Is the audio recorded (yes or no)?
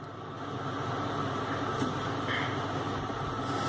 yes